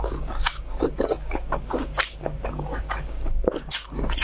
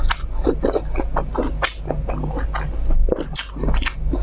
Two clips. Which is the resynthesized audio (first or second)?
first